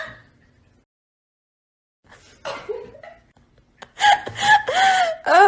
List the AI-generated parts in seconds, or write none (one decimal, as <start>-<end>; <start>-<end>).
none